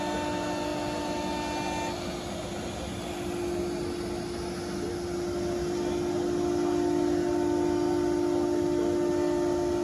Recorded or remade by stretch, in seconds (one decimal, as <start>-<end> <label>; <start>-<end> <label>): 0.0-9.8 recorded